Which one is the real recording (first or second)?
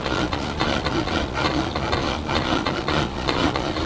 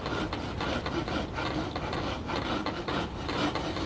second